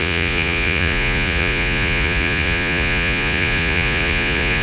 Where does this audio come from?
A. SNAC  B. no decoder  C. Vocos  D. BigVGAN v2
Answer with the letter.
C